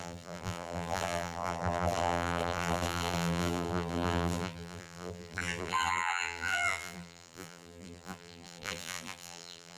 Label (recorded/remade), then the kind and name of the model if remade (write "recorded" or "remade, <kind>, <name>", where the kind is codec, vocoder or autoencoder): remade, vocoder, BigVGAN v2